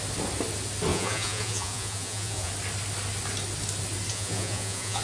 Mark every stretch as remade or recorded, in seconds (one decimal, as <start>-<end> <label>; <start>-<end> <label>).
0.0-0.9 recorded; 0.9-2.5 remade; 2.5-4.1 recorded; 4.1-5.0 remade